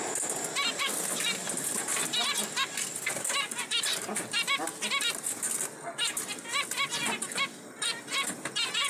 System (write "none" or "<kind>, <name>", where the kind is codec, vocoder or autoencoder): none